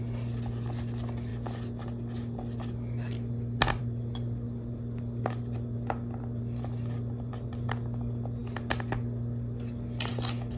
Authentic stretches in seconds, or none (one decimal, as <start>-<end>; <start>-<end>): 0.0-10.6